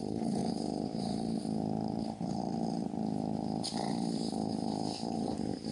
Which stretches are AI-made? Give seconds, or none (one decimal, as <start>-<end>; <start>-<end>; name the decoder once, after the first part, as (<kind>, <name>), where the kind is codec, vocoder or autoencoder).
0.0-0.4 (codec, HILCodec); 2.0-2.4